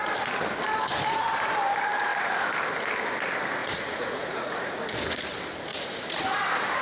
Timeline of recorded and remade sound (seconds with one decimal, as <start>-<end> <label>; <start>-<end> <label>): 0.0-3.6 recorded; 3.6-4.8 remade; 4.8-5.7 recorded; 5.7-6.2 remade; 6.2-6.8 recorded